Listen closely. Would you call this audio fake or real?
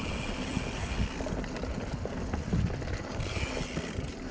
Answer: real